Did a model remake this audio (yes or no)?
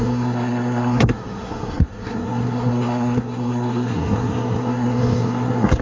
yes